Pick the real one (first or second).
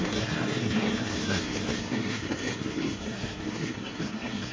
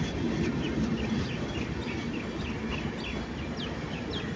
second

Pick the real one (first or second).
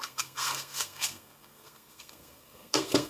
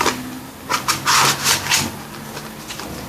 second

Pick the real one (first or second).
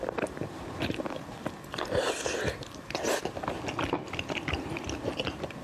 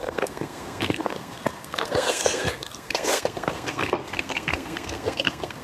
first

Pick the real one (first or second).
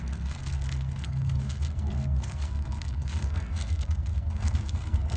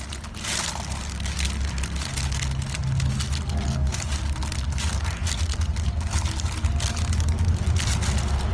second